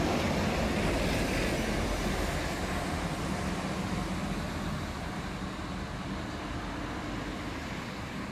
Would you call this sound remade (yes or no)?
no